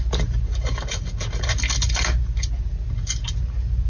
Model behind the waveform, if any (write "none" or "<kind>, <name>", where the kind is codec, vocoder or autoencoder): none